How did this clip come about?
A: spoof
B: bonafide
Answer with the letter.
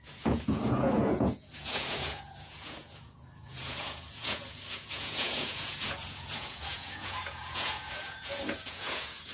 A